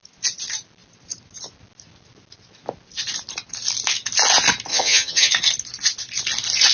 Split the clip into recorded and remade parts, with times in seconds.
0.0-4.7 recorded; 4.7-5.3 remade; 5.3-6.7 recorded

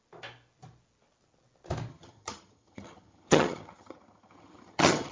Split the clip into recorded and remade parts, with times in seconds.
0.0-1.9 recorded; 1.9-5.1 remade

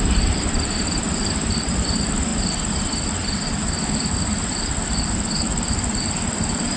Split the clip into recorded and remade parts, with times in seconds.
0.0-6.8 recorded